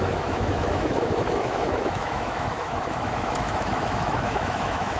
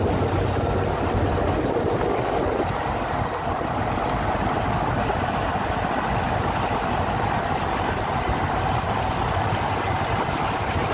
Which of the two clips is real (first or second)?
second